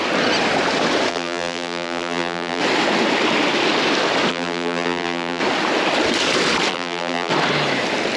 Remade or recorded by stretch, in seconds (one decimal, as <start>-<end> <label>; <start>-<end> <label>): 0.0-1.1 recorded; 1.1-2.6 remade; 2.6-4.3 recorded; 4.3-5.4 remade; 5.4-6.7 recorded; 6.7-7.3 remade; 7.3-8.2 recorded